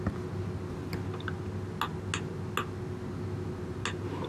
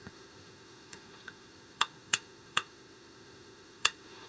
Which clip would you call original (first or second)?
first